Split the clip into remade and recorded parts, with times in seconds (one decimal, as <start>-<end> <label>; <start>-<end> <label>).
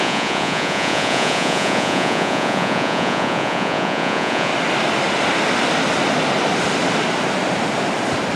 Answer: 0.0-4.5 remade; 4.5-8.4 recorded